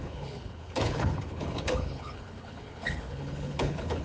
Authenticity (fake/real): fake